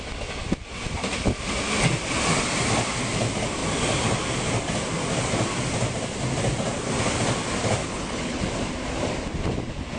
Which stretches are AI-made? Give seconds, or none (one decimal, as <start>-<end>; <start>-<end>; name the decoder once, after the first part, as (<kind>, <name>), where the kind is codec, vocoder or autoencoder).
7.8-8.4 (codec, HILCodec)